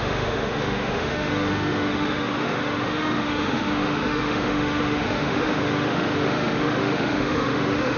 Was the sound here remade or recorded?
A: remade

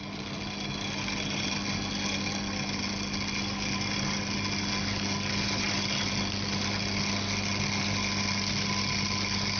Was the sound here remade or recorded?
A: recorded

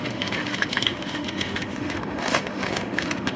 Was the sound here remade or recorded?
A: remade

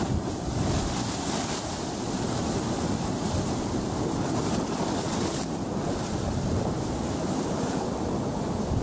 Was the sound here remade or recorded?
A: recorded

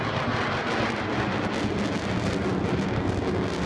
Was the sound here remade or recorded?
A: recorded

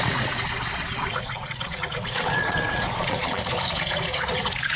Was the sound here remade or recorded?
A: remade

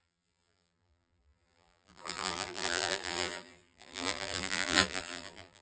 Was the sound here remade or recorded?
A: remade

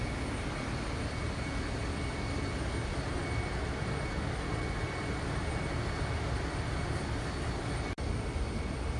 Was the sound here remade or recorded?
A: recorded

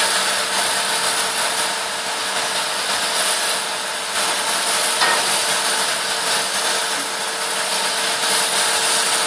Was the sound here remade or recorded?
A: recorded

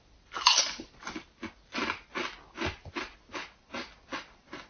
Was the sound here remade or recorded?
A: recorded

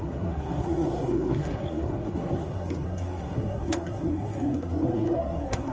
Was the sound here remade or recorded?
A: remade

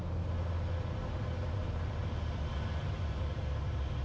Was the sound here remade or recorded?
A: recorded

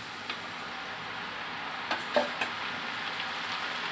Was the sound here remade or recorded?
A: recorded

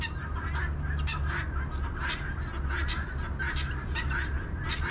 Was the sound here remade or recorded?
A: recorded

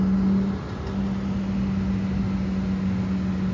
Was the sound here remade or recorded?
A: recorded